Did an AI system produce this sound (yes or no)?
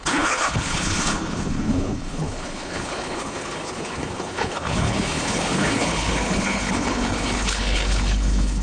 yes